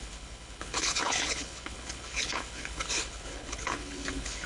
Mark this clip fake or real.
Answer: fake